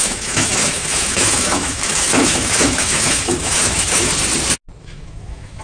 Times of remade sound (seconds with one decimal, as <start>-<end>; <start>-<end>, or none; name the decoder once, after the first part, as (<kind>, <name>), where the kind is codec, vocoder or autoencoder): 0.0-4.1 (autoencoder, DAC-VAE); 4.8-5.6